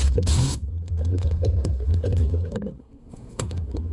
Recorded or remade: remade